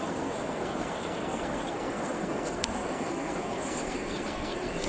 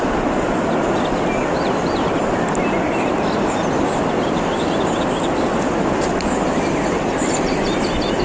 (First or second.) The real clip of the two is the second